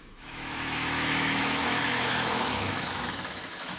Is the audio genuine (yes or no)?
no